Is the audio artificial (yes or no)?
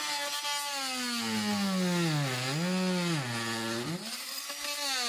no